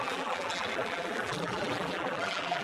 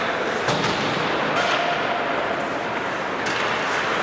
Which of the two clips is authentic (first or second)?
second